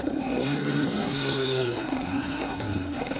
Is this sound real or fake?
fake